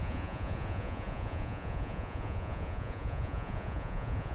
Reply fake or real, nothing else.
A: fake